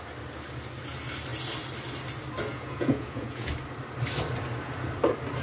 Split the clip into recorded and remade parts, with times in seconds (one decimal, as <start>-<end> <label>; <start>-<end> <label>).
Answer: 0.0-2.5 recorded; 2.5-3.5 remade; 3.5-5.4 recorded